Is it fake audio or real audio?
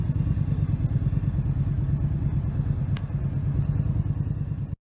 real